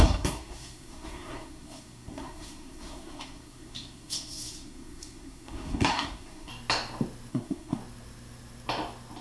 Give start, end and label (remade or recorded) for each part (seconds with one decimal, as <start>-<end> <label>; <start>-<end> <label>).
0.0-6.5 remade; 6.5-7.3 recorded; 7.3-7.8 remade; 7.8-9.2 recorded